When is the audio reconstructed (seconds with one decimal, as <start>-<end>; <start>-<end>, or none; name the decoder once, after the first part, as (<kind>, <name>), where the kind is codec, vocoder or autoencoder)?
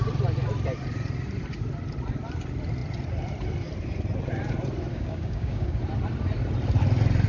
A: 4.9-5.8 (codec, DAC)